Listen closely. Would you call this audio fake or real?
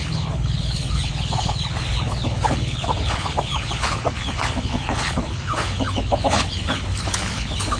fake